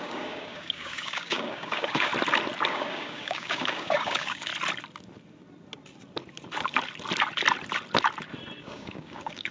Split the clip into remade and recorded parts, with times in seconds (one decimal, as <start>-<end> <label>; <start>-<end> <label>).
0.0-2.1 remade; 2.1-2.7 recorded; 2.7-4.5 remade; 4.5-8.6 recorded; 8.6-9.5 remade